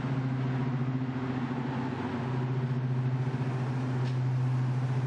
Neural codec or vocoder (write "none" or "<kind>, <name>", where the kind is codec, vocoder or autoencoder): none